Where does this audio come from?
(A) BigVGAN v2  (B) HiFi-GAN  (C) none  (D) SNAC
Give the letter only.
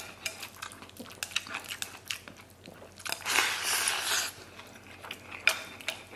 C